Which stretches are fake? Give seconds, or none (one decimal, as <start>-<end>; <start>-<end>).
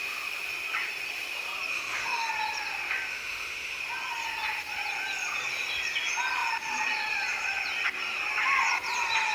1.7-2.3; 3.1-3.8